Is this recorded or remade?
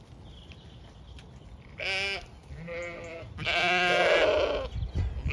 recorded